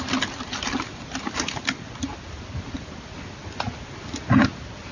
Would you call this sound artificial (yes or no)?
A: no